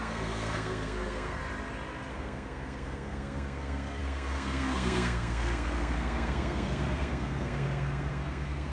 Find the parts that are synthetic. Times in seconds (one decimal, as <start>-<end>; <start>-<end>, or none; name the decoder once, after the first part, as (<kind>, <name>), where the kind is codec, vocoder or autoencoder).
0.0-1.4 (codec, SNAC); 2.1-8.7